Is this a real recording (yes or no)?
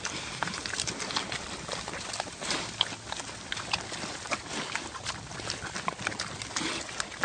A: yes